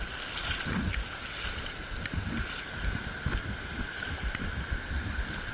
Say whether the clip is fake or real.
real